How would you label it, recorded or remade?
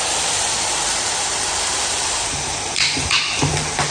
remade